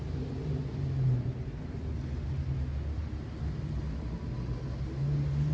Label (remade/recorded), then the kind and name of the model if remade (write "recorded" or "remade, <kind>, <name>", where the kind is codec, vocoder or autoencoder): recorded